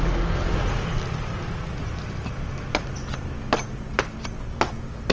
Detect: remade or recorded recorded